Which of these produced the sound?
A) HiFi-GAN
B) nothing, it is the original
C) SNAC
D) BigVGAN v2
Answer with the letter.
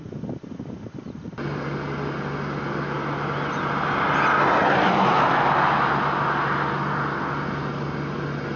B